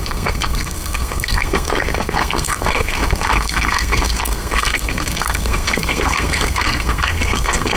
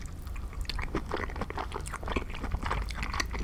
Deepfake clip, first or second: first